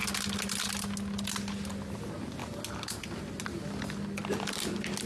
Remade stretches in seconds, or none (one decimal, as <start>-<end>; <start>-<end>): none